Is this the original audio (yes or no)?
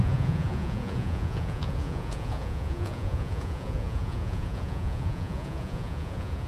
no